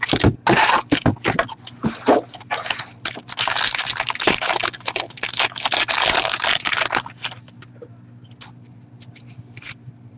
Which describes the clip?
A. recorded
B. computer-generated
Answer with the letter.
A